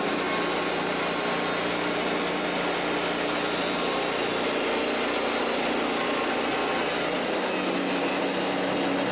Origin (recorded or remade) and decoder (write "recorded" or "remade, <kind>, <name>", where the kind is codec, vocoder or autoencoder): recorded